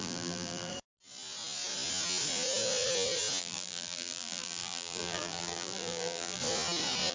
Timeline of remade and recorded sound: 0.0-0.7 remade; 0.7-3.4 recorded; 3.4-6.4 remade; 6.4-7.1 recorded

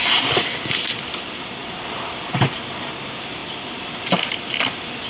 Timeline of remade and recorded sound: 0.0-5.1 recorded

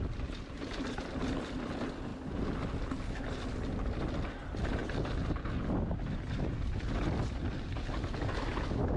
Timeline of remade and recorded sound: 0.0-9.0 recorded